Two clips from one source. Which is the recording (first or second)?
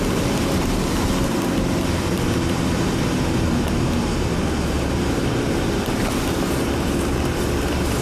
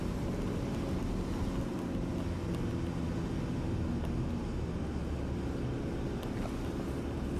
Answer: second